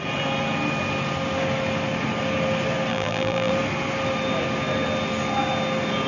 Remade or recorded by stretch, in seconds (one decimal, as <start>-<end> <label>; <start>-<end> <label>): 0.0-2.9 recorded; 2.9-3.5 remade; 3.5-6.1 recorded